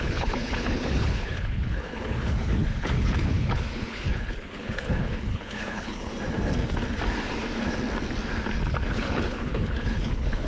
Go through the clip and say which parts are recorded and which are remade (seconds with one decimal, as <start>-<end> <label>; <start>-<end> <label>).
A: 0.0-6.1 remade; 6.1-8.9 recorded; 8.9-10.5 remade